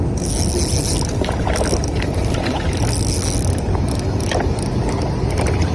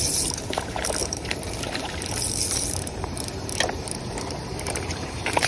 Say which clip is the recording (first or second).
first